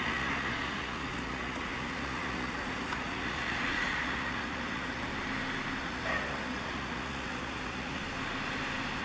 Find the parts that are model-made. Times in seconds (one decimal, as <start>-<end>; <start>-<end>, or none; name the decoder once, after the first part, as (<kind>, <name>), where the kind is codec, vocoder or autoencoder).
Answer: 0.0-5.1 (vocoder, Vocos); 5.8-8.0